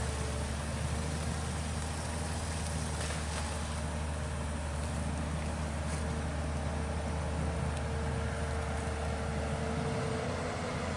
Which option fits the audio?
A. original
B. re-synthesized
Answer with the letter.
A